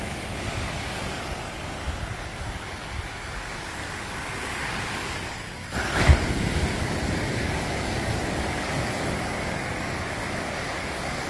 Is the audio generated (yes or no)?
yes